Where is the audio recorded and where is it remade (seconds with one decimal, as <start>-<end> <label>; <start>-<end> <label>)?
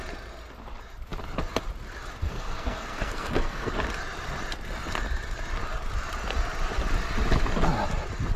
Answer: 0.0-2.2 recorded; 2.2-3.7 remade; 3.7-8.4 recorded